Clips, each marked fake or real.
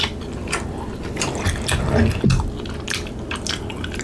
real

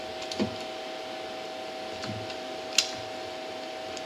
real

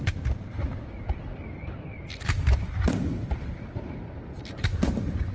real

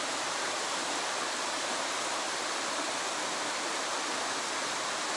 real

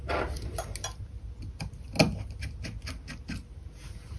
real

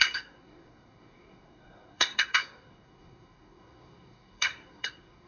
fake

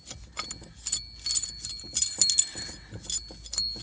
real